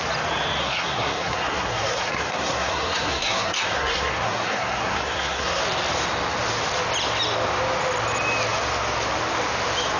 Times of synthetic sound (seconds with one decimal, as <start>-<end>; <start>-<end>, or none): 0.6-5.6

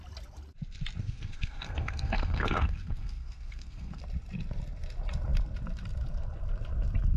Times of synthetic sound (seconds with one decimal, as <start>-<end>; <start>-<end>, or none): 1.0-4.0

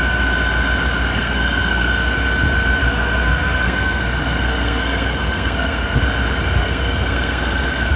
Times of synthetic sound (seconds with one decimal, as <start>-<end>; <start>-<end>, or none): 1.1-1.9; 2.8-6.0; 6.6-8.0